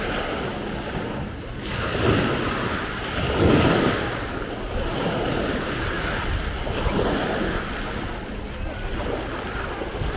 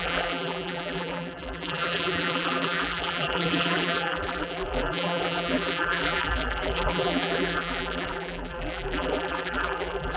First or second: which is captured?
first